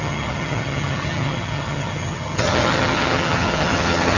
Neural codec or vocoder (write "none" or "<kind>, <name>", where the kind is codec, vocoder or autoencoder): vocoder, HiFi-GAN